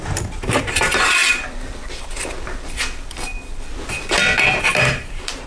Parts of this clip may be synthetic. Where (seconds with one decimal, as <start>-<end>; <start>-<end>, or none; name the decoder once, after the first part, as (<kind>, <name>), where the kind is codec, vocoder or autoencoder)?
0.0-1.2 (vocoder, BigVGAN v2); 4.5-5.5